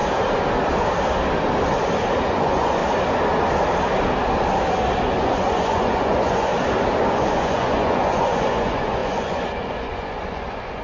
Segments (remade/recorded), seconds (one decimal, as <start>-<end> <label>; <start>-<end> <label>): 0.0-2.3 recorded; 2.3-2.8 remade; 2.8-5.2 recorded; 5.2-6.5 remade; 6.5-7.1 recorded; 7.1-10.8 remade